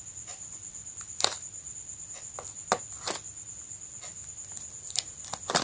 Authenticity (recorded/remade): recorded